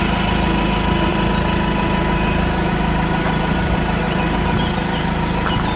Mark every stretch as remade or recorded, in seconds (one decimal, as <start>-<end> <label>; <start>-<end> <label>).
0.0-5.8 recorded

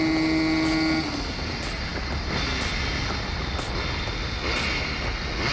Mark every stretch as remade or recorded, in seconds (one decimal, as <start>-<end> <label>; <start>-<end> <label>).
0.0-5.5 recorded